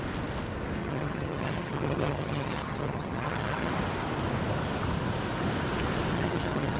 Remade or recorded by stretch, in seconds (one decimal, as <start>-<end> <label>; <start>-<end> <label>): 0.0-0.8 recorded; 0.8-3.7 remade; 3.7-6.1 recorded; 6.1-6.8 remade